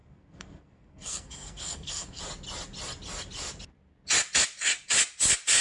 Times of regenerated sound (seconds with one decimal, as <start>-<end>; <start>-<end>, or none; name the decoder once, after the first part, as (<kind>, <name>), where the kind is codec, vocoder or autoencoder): 0.0-2.2 (codec, SNAC)